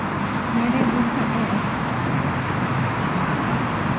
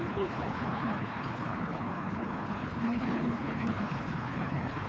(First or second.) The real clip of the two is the first